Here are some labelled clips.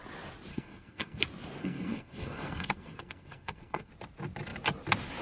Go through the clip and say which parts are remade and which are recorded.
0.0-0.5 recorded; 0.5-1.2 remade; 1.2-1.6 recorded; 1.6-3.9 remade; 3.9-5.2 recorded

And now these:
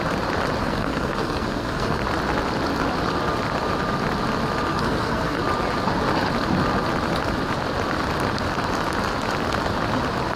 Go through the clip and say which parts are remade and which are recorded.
0.0-0.6 recorded; 0.6-2.0 remade; 2.0-4.7 recorded; 4.7-5.4 remade; 5.4-10.4 recorded

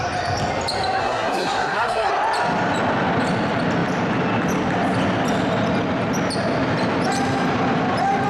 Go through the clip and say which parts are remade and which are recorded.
0.0-1.0 recorded; 1.0-2.1 remade; 2.1-8.3 recorded

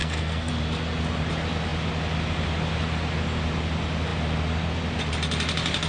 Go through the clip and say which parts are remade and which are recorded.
0.0-0.5 remade; 0.5-5.9 recorded

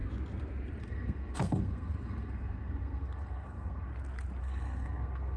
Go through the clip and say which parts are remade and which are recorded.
0.0-0.8 recorded; 0.8-3.9 remade; 3.9-4.4 recorded; 4.4-5.4 remade

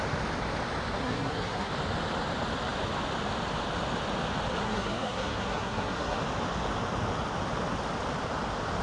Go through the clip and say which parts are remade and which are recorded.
0.0-1.0 recorded; 1.0-1.7 remade; 1.7-4.6 recorded; 4.6-6.2 remade; 6.2-8.8 recorded

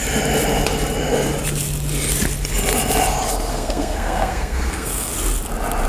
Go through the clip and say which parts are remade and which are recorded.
0.0-3.5 recorded; 3.5-5.1 remade; 5.1-5.9 recorded

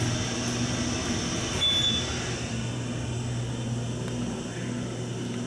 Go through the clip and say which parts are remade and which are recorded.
0.0-5.5 recorded